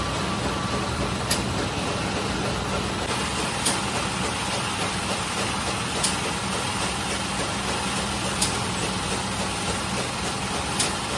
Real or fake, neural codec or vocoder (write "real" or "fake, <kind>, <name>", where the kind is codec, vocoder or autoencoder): real